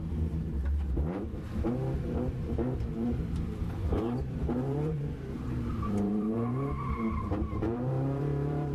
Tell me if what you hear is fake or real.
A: fake